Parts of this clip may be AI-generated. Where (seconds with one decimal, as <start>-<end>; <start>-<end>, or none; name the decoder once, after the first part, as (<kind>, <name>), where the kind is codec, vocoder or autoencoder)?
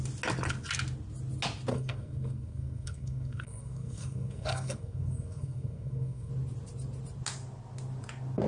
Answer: 1.7-6.3 (codec, SNAC)